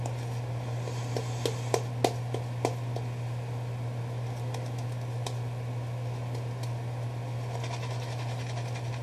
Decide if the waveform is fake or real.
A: real